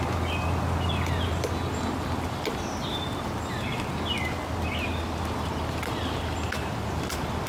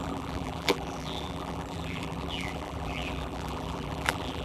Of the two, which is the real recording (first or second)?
first